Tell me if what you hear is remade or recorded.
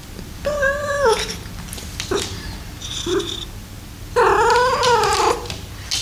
recorded